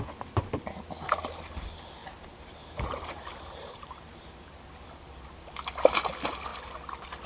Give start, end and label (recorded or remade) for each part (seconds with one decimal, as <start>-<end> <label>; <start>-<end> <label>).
0.0-2.0 recorded; 2.0-4.7 remade; 4.7-7.3 recorded